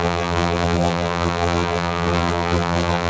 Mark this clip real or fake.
fake